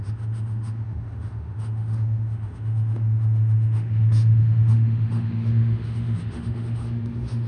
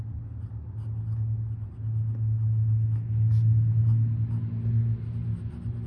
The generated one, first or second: first